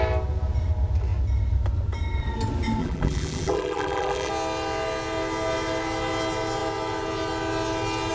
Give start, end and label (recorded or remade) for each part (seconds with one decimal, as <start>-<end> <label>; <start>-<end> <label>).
0.0-2.8 recorded; 2.8-4.3 remade; 4.3-8.1 recorded